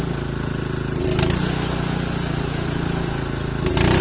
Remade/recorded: recorded